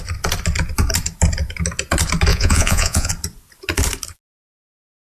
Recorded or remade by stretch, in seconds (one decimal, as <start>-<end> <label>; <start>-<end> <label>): 0.0-2.3 recorded; 2.3-3.1 remade; 3.1-5.2 recorded